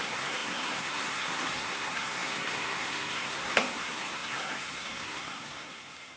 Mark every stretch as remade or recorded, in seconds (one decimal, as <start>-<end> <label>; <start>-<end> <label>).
0.0-6.2 remade

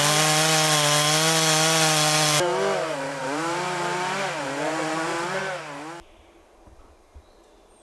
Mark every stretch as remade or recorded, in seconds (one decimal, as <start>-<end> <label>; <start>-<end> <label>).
0.0-3.2 recorded; 3.2-5.4 remade; 5.4-7.8 recorded

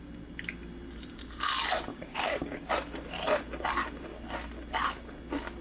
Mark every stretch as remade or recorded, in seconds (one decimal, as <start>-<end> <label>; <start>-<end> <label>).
0.0-1.9 recorded; 1.9-2.7 remade; 2.7-5.6 recorded

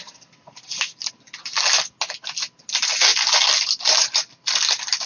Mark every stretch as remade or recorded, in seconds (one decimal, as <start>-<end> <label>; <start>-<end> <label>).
0.0-5.1 recorded

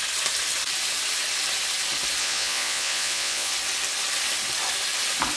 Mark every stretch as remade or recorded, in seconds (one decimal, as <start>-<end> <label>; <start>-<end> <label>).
0.0-2.2 recorded; 2.2-3.5 remade; 3.5-5.4 recorded

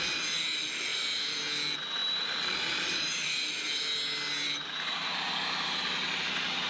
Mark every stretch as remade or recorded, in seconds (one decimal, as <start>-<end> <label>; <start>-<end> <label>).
0.0-0.9 recorded; 0.9-1.4 remade; 1.4-2.0 recorded; 2.0-3.6 remade; 3.6-6.7 recorded

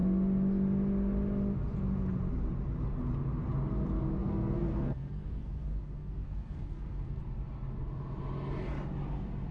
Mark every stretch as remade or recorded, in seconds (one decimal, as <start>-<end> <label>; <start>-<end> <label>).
0.0-4.2 recorded; 4.2-7.2 remade; 7.2-9.5 recorded